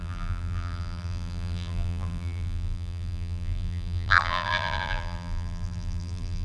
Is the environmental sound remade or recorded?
remade